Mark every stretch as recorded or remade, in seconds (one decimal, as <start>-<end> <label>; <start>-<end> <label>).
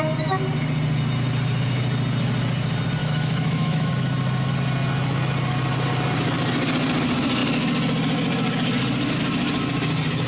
0.0-3.0 recorded; 3.0-3.9 remade; 3.9-10.3 recorded